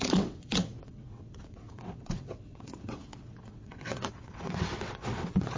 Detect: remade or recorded remade